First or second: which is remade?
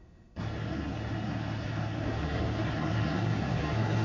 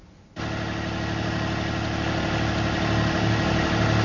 first